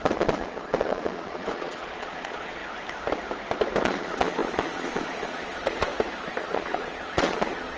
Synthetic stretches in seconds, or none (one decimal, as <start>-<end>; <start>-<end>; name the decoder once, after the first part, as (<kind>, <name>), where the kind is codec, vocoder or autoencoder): 0.0-2.6 (vocoder, Vocos); 3.8-5.9; 6.4-7.8